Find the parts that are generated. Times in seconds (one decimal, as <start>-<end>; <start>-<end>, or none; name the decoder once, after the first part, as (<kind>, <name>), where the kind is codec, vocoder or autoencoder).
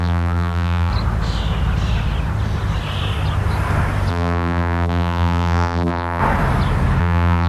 0.0-0.9 (vocoder, BigVGAN v2); 4.1-6.2; 7.0-7.5